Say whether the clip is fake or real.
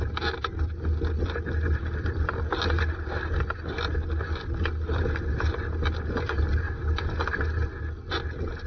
real